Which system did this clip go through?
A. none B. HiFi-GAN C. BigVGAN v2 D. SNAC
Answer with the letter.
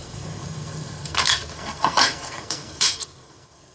D